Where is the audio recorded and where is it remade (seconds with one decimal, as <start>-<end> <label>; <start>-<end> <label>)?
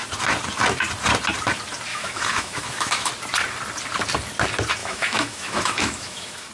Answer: 0.0-1.9 recorded; 1.9-3.1 remade; 3.1-4.8 recorded; 4.8-6.5 remade